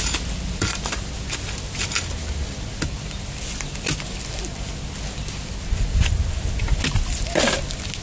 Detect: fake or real real